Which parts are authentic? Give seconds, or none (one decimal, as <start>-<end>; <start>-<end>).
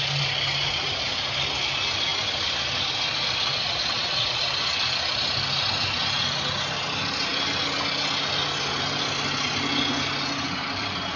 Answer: 0.0-3.5; 4.4-11.2